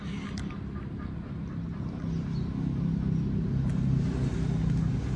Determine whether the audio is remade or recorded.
recorded